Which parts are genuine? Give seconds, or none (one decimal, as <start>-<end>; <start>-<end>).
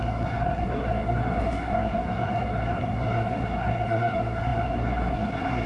none